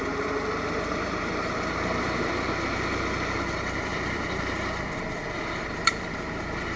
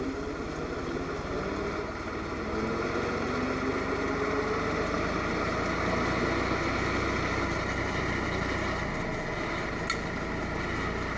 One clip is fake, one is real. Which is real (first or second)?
second